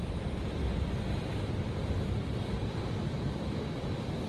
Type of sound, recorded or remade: recorded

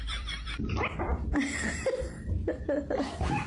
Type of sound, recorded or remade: remade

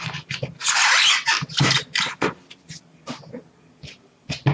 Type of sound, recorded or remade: recorded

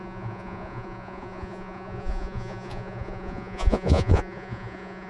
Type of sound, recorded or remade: remade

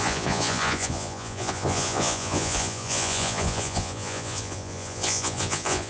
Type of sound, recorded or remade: remade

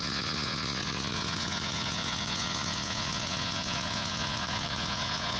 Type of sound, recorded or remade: remade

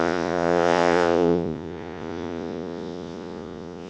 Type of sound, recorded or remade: remade